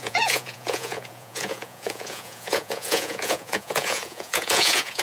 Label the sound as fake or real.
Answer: fake